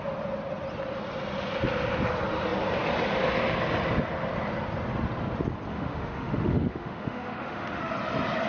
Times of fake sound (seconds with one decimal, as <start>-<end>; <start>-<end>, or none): 5.7-7.9